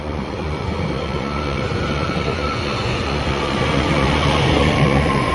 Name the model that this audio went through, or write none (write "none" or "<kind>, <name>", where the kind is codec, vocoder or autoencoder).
vocoder, Vocos